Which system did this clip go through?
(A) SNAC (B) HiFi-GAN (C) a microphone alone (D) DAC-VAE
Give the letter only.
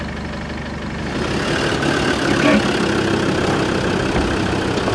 C